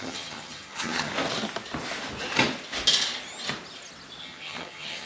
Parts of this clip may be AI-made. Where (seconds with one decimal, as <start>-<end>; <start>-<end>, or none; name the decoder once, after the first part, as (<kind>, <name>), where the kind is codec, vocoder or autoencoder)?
0.0-1.1 (vocoder, HiFi-GAN); 4.2-5.1